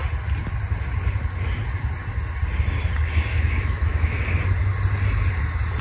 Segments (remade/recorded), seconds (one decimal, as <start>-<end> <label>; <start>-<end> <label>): 0.0-3.3 recorded; 3.3-4.2 remade; 4.2-5.8 recorded